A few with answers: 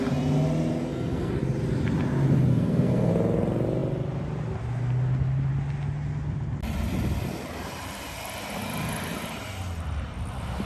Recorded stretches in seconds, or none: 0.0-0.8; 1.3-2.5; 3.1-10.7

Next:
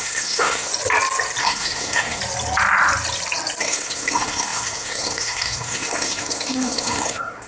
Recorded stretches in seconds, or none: 0.7-1.4; 2.2-3.6

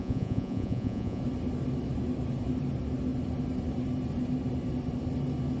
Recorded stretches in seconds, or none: 1.2-5.6

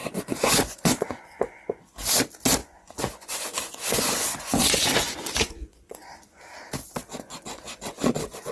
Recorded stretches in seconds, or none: 1.8-2.6; 6.4-7.1

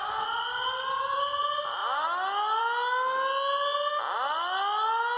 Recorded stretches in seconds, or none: 0.0-5.2

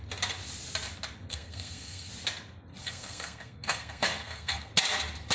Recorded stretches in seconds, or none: 0.0-1.3; 2.1-2.8; 4.7-5.3

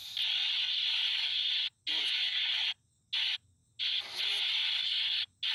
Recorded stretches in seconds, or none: 0.0-5.5

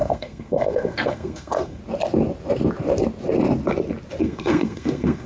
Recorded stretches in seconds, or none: 1.8-4.2